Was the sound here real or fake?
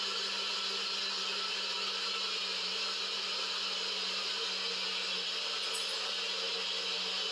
real